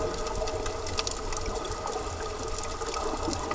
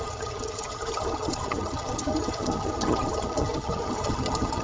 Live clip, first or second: first